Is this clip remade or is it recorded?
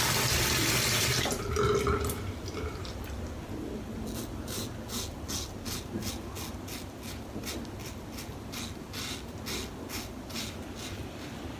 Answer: recorded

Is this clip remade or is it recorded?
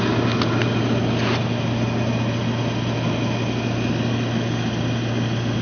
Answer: recorded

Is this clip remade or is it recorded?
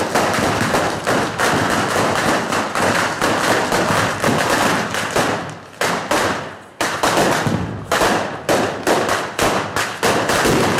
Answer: recorded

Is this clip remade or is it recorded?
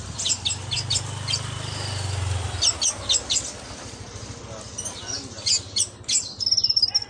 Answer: recorded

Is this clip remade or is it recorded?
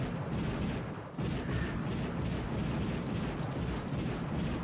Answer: recorded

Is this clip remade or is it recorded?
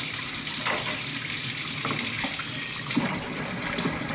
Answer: recorded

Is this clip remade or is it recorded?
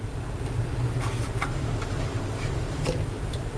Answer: remade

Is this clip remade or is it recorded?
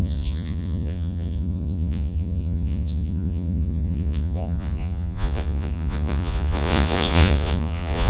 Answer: remade